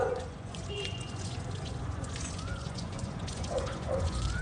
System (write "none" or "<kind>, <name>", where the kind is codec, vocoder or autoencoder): vocoder, Vocos